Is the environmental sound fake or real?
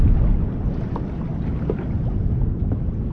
real